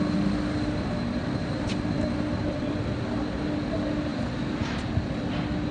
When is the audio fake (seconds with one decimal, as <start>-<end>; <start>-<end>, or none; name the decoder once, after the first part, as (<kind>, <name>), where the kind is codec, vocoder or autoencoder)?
4.1-4.9 (vocoder, BigVGAN v2)